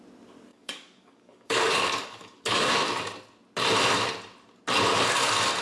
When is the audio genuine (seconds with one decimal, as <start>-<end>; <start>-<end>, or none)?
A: 0.0-0.5; 2.7-5.6